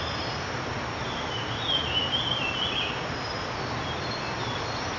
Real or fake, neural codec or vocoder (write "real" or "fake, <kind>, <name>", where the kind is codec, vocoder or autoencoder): real